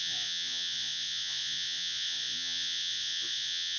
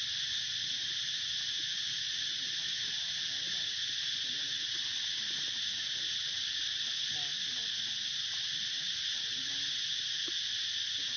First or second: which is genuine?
second